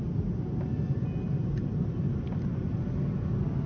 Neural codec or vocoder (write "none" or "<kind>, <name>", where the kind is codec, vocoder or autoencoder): none